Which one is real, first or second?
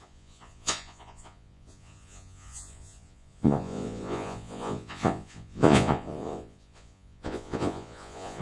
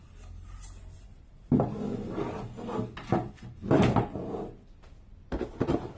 second